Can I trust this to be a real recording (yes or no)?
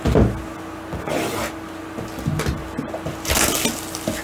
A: yes